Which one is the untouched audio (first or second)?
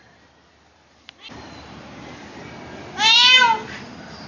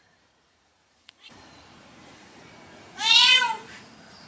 first